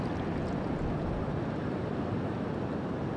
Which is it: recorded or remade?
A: recorded